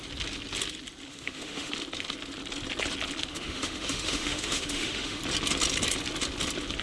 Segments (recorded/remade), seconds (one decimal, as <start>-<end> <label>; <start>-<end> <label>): 0.0-1.1 recorded; 1.1-1.7 remade; 1.7-3.3 recorded; 3.3-5.2 remade; 5.2-6.8 recorded